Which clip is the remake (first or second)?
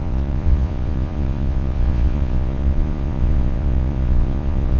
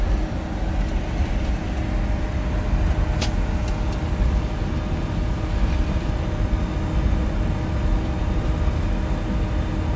first